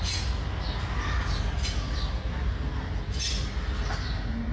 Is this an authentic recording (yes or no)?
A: yes